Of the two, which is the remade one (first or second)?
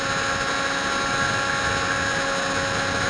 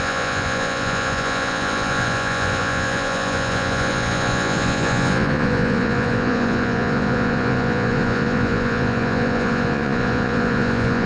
second